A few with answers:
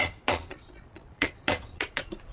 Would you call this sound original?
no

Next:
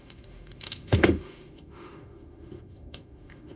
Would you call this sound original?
no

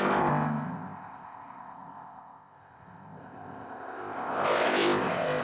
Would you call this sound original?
no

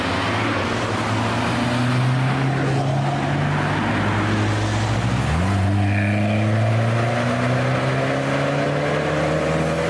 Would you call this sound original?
yes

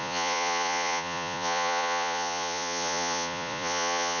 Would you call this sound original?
no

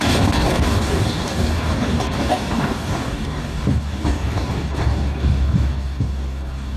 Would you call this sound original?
no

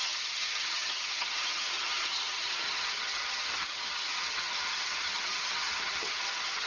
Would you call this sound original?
no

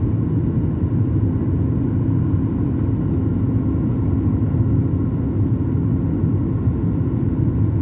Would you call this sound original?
yes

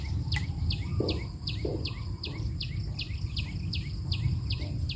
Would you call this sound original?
yes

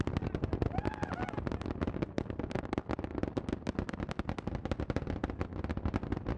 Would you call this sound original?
yes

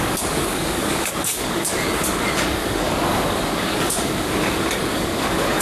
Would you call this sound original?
no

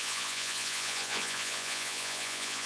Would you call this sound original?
no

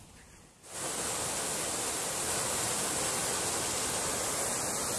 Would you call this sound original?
yes